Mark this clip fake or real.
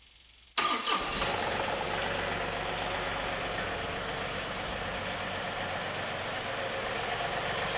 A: real